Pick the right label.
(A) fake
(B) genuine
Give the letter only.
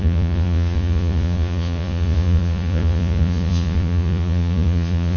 A